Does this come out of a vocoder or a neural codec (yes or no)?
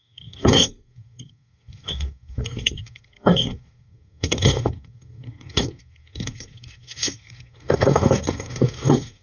yes